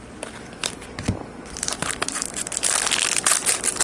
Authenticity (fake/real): real